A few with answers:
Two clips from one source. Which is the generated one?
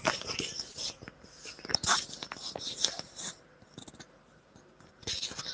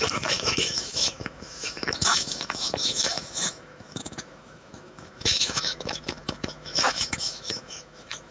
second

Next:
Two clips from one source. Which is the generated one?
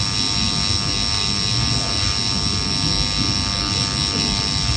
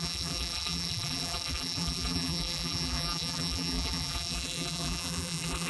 second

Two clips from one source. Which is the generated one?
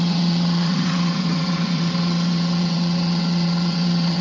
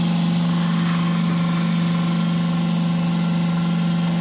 first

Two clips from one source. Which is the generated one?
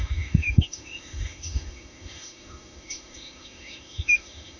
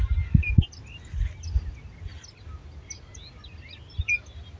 first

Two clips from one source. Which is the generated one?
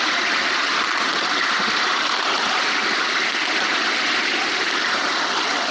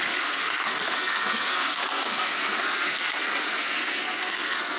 second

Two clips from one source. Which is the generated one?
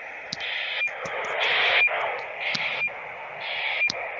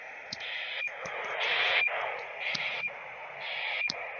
second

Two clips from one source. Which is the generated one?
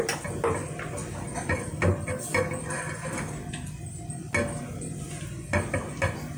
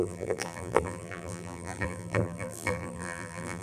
second